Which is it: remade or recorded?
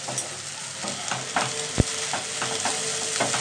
recorded